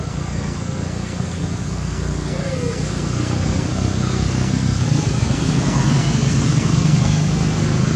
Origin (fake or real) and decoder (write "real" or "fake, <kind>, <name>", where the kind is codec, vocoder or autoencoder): fake, codec, SNAC